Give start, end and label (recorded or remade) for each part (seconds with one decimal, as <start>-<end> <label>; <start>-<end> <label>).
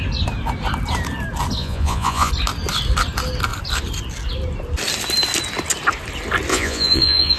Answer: 0.0-1.6 recorded; 1.6-2.3 remade; 2.3-6.5 recorded; 6.5-7.4 remade